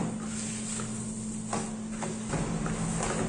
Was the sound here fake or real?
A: real